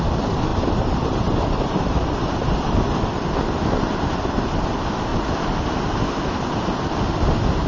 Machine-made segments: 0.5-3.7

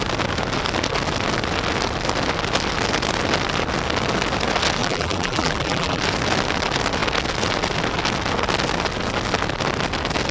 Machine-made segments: 4.8-6.0

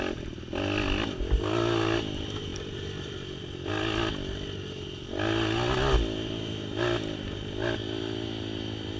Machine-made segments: 2.5-3.7; 7.8-9.0

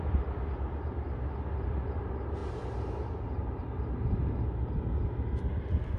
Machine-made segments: 2.4-3.6

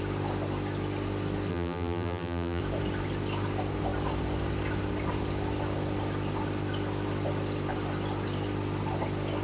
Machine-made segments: 1.5-2.6

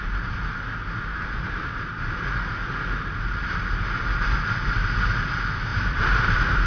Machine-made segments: 1.1-1.6; 5.7-6.7

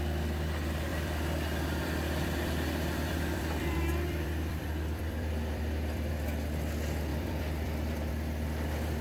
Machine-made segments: 0.9-6.1; 7.1-8.1

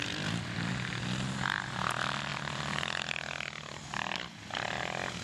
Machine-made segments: 0.0-0.7; 2.3-4.3